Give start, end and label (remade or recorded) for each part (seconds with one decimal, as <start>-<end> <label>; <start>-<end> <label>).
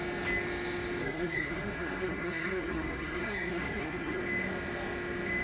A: 0.0-1.0 recorded; 1.0-4.2 remade; 4.2-5.4 recorded